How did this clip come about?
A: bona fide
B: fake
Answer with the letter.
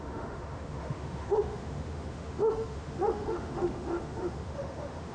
B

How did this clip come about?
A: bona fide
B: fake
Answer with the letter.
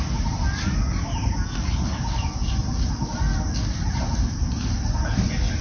A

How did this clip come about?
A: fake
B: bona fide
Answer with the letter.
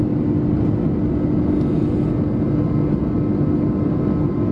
B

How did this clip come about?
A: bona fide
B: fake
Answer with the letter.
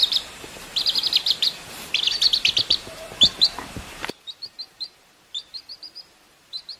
B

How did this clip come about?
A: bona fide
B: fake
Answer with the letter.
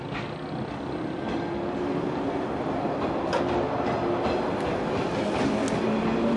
A